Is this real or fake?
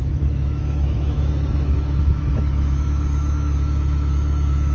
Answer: fake